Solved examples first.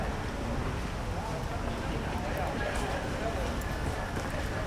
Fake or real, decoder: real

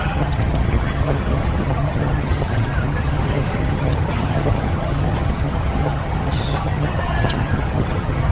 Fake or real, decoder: fake, vocoder, HiFi-GAN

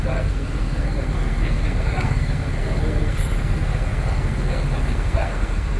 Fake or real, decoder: fake, codec, SNAC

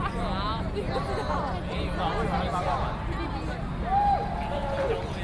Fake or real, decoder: real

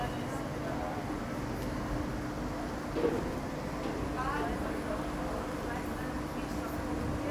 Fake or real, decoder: real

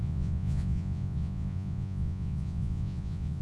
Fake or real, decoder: fake, vocoder, Vocos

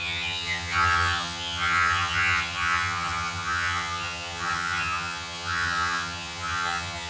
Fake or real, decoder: fake, vocoder, HiFi-GAN